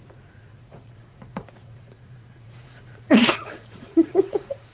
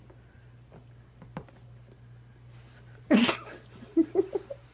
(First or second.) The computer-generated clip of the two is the first